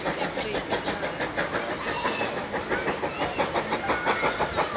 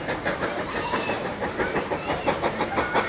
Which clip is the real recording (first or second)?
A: first